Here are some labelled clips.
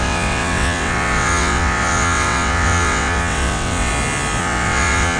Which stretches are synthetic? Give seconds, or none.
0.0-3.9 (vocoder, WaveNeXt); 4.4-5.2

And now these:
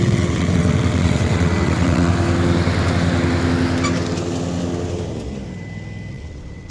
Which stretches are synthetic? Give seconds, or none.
0.0-2.1 (vocoder, WaveNeXt); 6.1-6.7

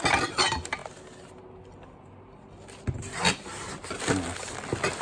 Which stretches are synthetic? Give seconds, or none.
none

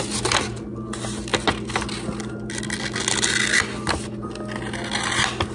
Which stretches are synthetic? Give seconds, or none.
none

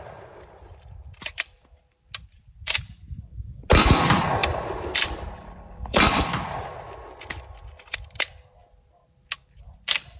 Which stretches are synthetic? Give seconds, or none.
4.4-6.3 (vocoder, BigVGAN v2)

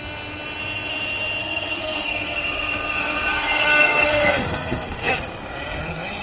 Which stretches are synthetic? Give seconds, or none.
1.4-5.1 (codec, SNAC)

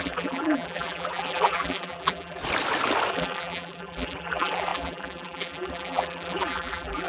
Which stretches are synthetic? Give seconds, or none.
0.0-2.4 (vocoder, BigVGAN v2); 3.1-7.1